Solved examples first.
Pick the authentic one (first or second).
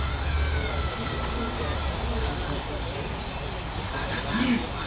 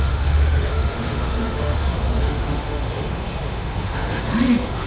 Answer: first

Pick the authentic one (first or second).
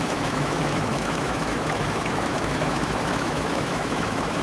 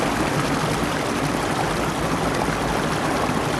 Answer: second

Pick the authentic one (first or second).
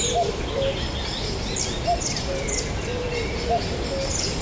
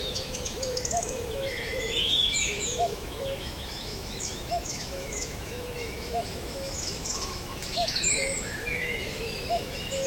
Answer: first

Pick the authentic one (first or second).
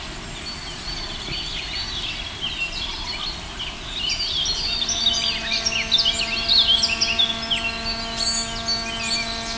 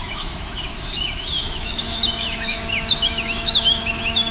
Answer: first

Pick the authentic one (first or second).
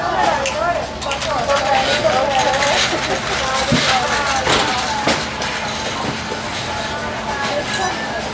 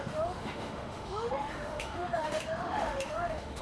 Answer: first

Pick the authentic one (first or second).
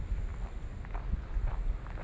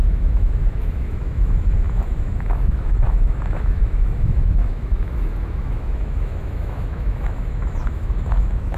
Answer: first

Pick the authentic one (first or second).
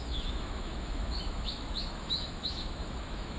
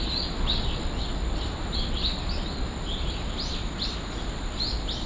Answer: second